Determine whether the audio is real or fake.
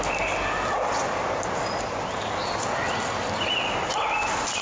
real